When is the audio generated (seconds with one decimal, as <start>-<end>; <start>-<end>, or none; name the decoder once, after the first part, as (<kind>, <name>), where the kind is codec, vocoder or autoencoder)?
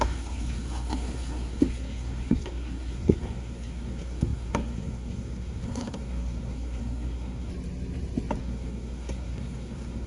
0.0-7.5 (codec, SNAC); 8.4-10.1